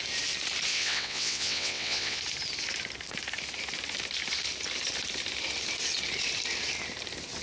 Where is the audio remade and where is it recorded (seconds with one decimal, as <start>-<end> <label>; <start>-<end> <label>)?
0.0-0.7 recorded; 0.7-2.2 remade; 2.2-7.4 recorded